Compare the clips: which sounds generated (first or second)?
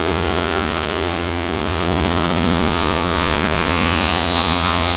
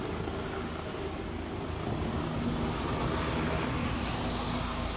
first